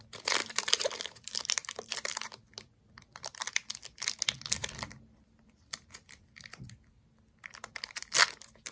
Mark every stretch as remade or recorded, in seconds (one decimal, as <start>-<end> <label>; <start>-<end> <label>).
0.0-0.4 recorded; 0.4-1.9 remade; 1.9-8.7 recorded